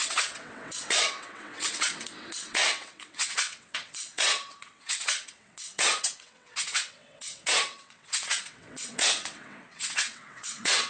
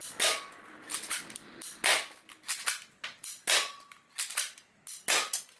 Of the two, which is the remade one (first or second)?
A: first